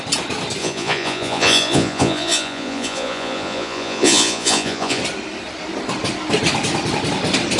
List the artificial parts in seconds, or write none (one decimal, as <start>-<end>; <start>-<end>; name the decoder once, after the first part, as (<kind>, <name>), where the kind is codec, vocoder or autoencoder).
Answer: 0.6-5.0 (vocoder, Vocos)